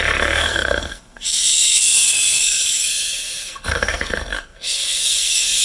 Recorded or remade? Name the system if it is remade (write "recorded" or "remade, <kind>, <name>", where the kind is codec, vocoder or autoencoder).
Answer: remade, codec, SNAC